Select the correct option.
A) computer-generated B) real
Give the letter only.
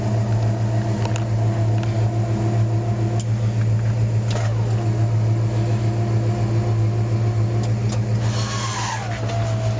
B